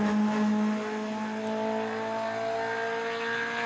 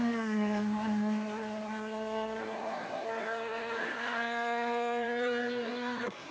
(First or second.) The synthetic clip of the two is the second